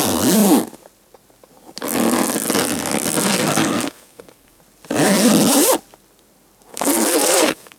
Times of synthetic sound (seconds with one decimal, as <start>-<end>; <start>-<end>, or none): 3.0-4.6; 6.7-7.8